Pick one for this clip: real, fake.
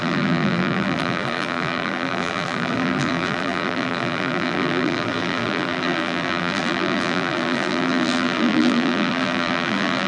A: fake